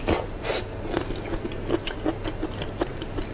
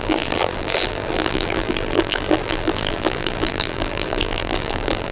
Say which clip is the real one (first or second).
first